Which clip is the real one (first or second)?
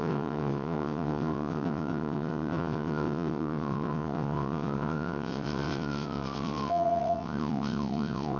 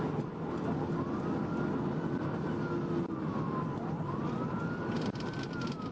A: second